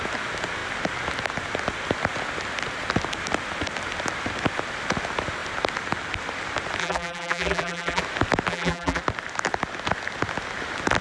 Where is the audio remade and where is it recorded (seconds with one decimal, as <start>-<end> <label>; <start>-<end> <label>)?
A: 0.0-6.8 recorded; 6.8-8.0 remade; 8.0-8.5 recorded; 8.5-9.0 remade; 9.0-11.0 recorded